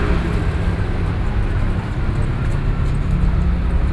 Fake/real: real